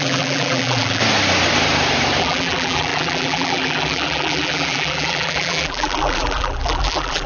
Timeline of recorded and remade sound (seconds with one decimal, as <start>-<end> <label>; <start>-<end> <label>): 0.0-1.0 remade; 1.0-2.2 recorded; 2.2-7.3 remade